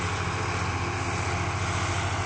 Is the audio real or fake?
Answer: real